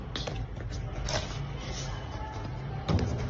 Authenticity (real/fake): real